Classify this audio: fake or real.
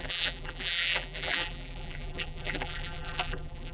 fake